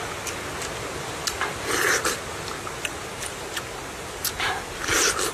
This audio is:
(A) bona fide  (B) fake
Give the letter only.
A